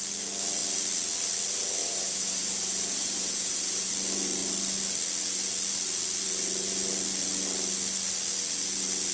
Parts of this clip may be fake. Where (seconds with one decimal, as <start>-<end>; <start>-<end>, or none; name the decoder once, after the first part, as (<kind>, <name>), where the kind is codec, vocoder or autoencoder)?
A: 1.8-3.9 (vocoder, Vocos)